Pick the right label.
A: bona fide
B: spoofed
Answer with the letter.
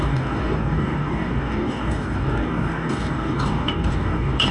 B